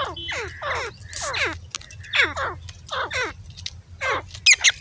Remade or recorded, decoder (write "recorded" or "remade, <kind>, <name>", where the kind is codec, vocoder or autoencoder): recorded